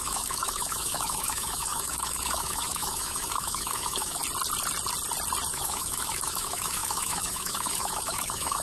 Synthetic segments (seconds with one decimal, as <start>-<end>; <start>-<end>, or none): 0.0-4.2; 5.5-8.6